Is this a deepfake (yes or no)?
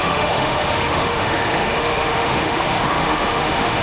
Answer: yes